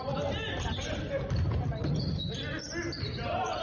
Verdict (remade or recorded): recorded